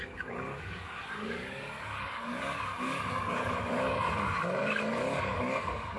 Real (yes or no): no